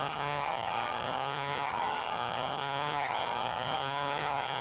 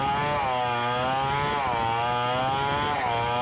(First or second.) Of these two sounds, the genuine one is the second